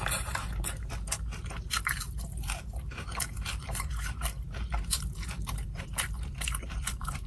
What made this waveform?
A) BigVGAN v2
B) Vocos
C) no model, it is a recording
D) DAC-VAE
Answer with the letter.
A